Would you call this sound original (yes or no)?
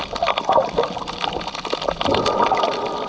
yes